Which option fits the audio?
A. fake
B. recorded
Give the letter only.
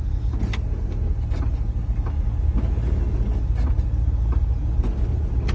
B